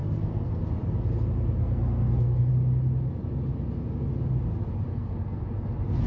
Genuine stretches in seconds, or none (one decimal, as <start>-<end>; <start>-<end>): 0.6-1.6; 2.5-4.9; 5.4-6.1